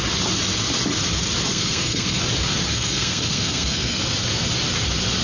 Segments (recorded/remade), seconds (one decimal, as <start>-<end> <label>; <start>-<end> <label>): 0.0-1.5 recorded; 1.5-2.2 remade; 2.2-2.7 recorded; 2.7-4.0 remade; 4.0-5.2 recorded